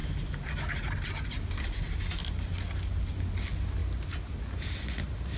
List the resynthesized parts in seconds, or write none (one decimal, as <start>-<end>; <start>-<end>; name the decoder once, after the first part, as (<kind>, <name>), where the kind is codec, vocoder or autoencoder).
none